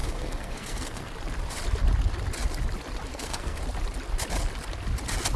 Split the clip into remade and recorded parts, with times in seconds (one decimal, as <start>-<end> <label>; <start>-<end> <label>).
0.0-1.1 remade; 1.1-3.1 recorded; 3.1-3.6 remade; 3.6-5.4 recorded